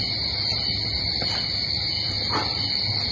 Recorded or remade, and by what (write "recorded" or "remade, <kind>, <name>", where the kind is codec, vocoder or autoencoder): recorded